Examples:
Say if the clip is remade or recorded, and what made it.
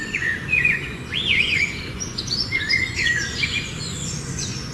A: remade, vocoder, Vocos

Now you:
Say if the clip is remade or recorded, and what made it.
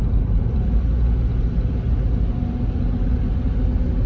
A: recorded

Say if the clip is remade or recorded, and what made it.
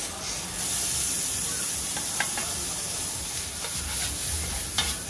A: recorded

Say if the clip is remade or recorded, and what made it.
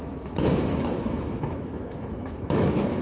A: remade, autoencoder, DAC-VAE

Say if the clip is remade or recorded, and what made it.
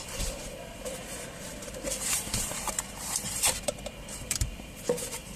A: remade, vocoder, BigVGAN v2